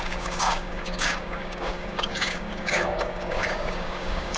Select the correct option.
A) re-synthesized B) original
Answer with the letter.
A